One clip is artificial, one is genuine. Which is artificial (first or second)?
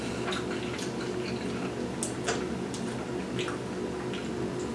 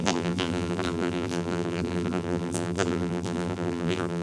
second